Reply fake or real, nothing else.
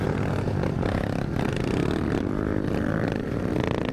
real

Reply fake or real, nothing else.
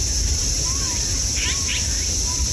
fake